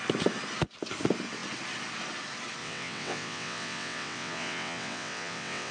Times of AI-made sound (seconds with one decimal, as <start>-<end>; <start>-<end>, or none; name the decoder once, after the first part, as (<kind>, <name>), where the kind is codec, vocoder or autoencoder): 2.6-5.7 (vocoder, WaveNeXt)